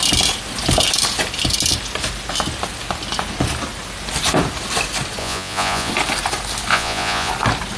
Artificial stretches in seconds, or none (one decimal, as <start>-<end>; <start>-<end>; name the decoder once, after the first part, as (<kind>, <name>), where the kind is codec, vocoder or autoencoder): 5.2-5.9 (vocoder, Vocos); 6.7-7.3